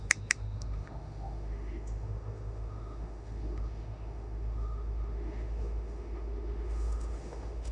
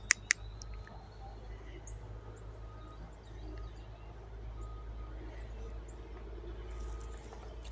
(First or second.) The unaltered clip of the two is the second